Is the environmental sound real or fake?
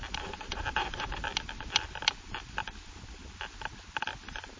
real